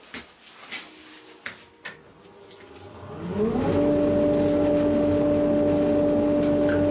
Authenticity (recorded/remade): recorded